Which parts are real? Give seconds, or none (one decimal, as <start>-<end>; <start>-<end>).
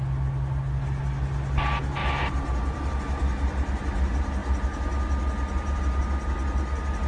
0.0-2.0; 2.9-7.1